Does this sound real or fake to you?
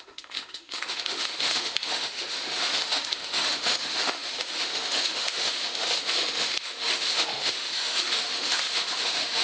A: fake